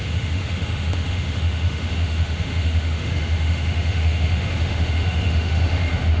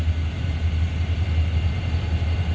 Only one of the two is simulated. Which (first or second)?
first